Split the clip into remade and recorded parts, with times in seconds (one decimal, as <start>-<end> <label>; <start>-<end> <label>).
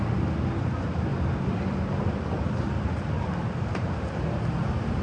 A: 0.0-5.0 recorded